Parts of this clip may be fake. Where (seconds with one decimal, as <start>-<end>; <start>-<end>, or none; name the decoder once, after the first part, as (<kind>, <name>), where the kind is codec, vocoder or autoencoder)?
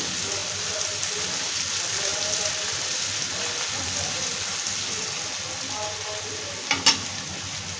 0.4-1.0 (vocoder, BigVGAN v2); 2.1-3.2